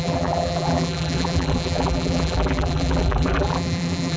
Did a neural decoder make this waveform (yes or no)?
yes